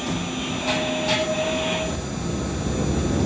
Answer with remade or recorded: recorded